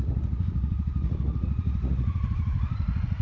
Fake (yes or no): yes